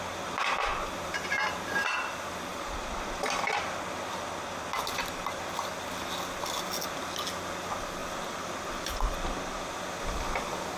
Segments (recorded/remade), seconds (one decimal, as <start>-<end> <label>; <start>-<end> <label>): 0.0-2.5 recorded; 2.5-3.5 remade; 3.5-10.8 recorded